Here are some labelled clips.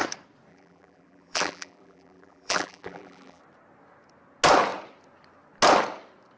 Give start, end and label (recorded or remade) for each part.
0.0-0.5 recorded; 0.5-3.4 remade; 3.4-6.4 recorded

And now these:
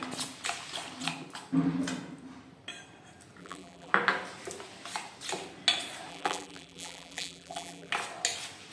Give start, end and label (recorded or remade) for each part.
0.0-3.4 recorded; 3.4-3.9 remade; 3.9-6.1 recorded; 6.1-7.9 remade; 7.9-8.7 recorded